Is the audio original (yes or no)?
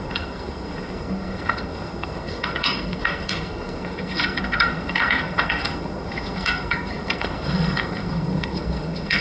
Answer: no